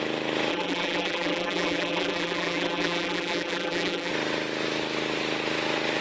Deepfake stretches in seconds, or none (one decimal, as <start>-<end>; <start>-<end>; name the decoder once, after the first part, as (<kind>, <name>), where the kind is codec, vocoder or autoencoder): 0.5-4.1 (vocoder, BigVGAN v2)